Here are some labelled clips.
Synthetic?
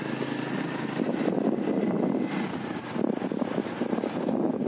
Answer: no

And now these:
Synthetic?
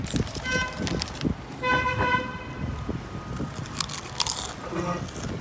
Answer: no